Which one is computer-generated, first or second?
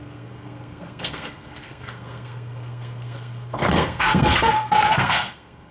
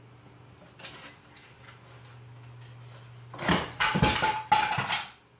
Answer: first